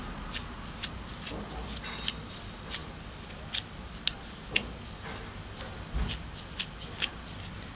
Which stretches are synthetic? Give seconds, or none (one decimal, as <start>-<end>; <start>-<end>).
none